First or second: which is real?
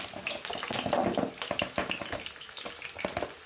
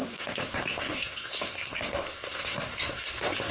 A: first